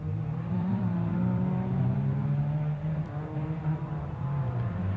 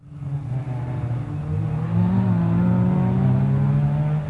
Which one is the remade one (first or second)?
first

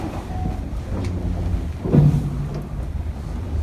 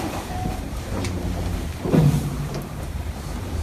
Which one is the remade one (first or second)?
second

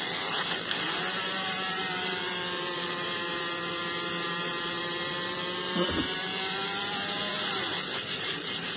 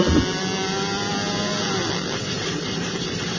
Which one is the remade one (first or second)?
first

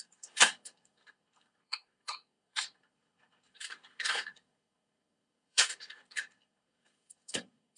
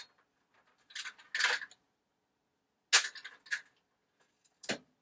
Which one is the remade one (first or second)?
first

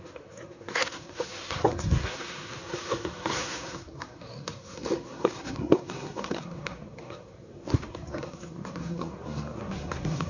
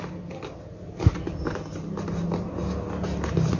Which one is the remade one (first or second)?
first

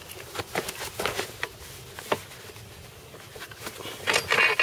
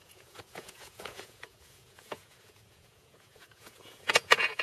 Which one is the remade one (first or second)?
second